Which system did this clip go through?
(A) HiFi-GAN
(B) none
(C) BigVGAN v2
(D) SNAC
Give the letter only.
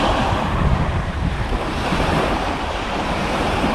C